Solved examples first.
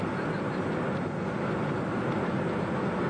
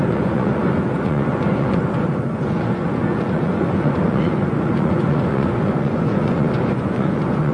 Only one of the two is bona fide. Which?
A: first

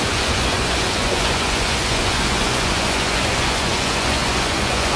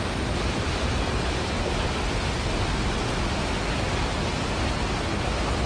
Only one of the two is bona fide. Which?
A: second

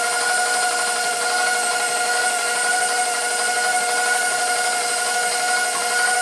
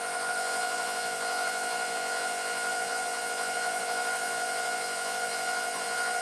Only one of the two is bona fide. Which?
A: first